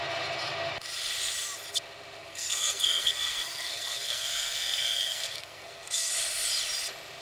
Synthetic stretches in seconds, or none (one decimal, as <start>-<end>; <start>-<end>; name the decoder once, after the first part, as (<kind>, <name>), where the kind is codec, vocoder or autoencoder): 2.2-6.1 (codec, SNAC)